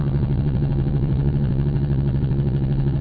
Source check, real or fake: fake